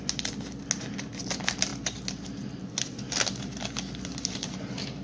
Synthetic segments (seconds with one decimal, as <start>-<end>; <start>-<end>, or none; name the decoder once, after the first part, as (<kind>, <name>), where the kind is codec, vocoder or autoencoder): none